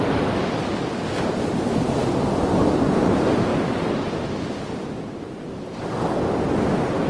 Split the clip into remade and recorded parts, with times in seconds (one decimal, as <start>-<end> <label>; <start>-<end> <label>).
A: 0.0-7.1 recorded